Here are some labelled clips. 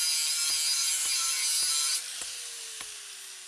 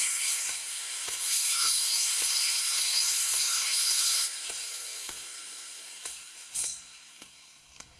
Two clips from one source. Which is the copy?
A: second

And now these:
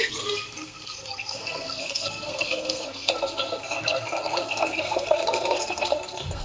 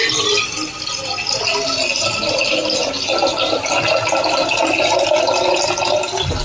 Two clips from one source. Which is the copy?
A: first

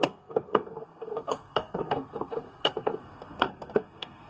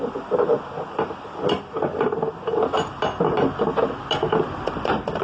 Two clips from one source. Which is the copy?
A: first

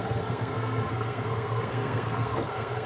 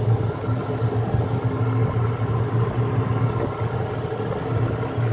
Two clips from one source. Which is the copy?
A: first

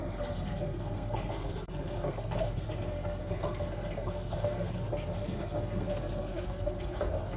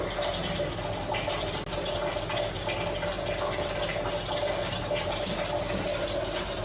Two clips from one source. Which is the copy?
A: first